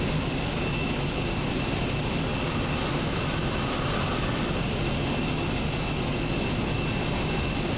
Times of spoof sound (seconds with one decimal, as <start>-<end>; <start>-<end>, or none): none